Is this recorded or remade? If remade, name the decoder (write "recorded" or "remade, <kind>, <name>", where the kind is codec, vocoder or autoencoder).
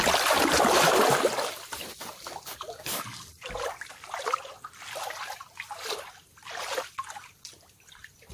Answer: recorded